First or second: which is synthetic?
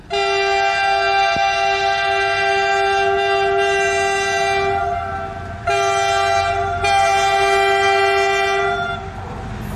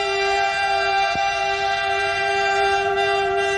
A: second